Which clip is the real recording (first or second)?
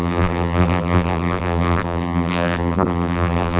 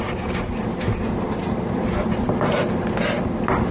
second